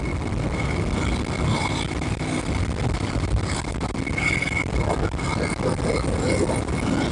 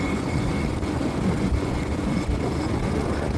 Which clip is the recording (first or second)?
first